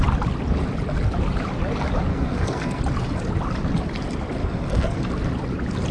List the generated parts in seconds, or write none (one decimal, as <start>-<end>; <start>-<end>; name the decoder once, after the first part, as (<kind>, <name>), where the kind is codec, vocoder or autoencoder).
2.1-2.8 (codec, SNAC); 4.4-5.1